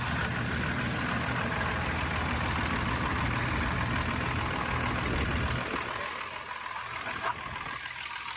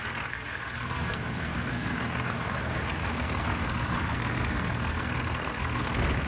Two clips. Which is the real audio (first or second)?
first